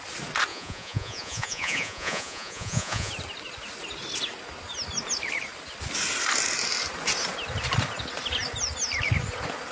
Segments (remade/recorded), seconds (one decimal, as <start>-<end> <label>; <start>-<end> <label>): 0.0-0.5 recorded; 0.5-3.1 remade; 3.1-9.7 recorded